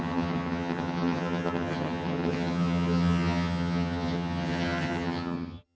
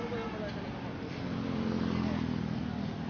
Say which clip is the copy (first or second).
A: first